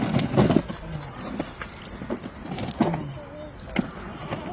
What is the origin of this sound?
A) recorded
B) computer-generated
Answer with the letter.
A